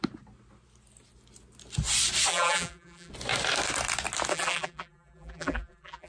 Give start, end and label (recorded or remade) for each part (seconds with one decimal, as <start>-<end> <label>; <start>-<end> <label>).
0.0-2.3 recorded; 2.3-3.1 remade; 3.1-4.3 recorded; 4.3-6.1 remade